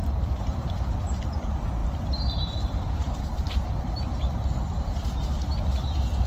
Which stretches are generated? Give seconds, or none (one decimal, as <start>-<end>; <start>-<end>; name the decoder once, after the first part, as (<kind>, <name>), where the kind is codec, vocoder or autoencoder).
1.8-4.9 (vocoder, BigVGAN v2)